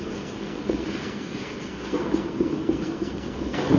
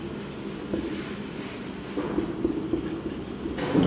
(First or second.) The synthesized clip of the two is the first